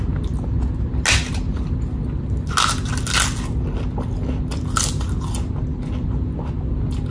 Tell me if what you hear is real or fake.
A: real